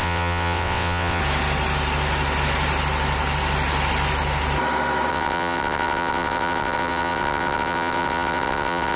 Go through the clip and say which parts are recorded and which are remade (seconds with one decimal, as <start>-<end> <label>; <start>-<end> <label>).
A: 0.0-1.2 remade; 1.2-5.1 recorded; 5.1-9.0 remade